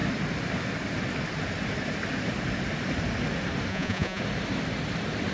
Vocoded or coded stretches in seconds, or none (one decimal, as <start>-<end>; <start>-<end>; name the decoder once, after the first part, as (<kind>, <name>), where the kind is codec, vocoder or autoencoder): 3.7-4.2 (vocoder, Vocos)